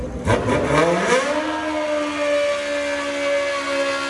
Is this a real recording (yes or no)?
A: yes